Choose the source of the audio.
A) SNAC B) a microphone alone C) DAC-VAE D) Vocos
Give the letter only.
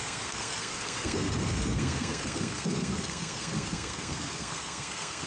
A